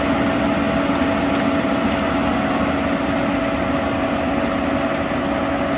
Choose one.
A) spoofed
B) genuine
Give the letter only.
B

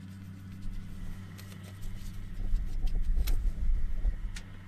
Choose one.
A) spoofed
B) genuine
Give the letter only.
B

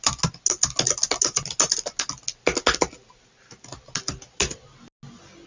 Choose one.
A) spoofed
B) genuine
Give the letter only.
B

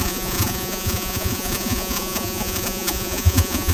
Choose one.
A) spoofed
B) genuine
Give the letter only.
A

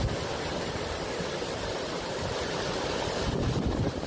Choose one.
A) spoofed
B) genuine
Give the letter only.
B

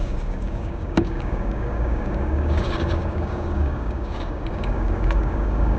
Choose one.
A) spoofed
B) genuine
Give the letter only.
A